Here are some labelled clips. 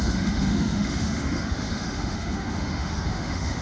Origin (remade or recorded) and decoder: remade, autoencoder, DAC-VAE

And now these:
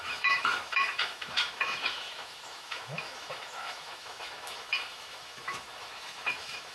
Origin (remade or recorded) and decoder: remade, autoencoder, DAC-VAE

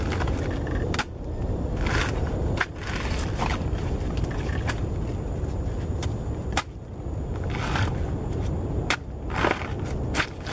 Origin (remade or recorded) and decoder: recorded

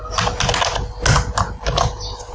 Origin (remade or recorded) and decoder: recorded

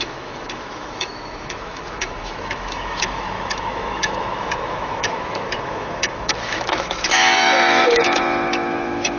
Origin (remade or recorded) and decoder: remade, autoencoder, DAC-VAE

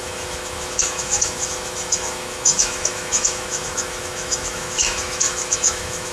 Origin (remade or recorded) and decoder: remade, autoencoder, DAC-VAE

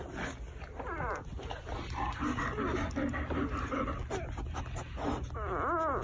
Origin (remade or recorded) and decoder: recorded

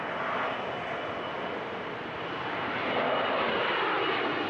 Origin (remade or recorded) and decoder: recorded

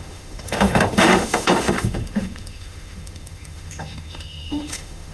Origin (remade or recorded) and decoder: remade, autoencoder, DAC-VAE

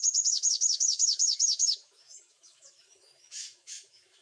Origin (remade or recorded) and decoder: remade, autoencoder, DAC-VAE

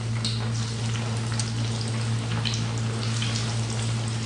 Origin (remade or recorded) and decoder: recorded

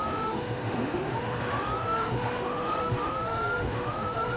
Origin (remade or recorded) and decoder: remade, autoencoder, DAC-VAE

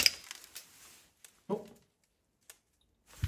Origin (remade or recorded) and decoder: recorded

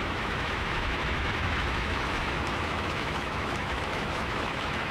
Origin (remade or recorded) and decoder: remade, autoencoder, DAC-VAE